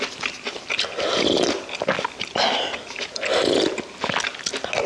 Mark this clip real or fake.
real